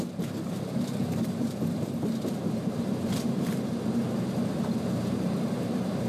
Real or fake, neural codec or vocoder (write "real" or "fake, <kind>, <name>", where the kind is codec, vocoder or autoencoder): fake, vocoder, BigVGAN v2